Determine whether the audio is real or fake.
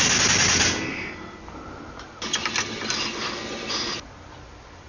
real